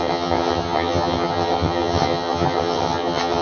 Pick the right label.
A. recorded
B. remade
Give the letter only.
B